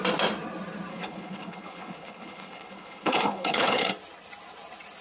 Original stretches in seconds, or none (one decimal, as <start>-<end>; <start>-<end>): 0.0-0.9; 3.9-5.0